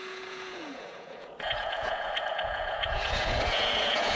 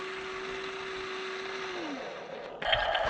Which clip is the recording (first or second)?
second